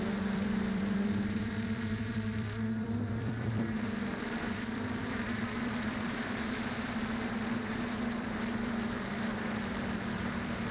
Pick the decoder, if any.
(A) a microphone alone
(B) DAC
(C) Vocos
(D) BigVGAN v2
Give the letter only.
D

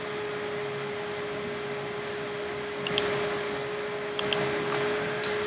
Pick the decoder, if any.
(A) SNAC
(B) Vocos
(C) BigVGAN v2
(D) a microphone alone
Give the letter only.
D